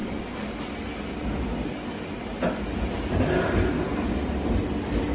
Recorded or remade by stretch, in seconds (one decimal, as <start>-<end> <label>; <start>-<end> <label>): 0.0-5.1 recorded